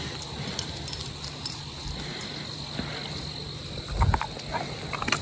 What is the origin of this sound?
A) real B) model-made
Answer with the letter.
A